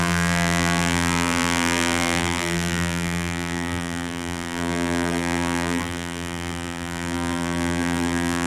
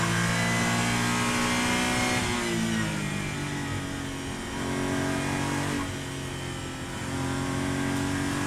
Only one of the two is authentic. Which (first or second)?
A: second